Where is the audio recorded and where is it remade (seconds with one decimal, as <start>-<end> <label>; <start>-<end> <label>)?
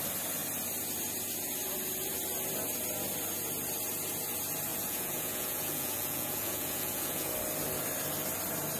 0.0-4.7 recorded; 4.7-7.3 remade; 7.3-8.8 recorded